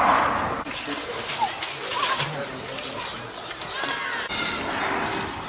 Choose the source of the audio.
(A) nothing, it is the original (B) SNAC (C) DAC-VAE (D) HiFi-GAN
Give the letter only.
A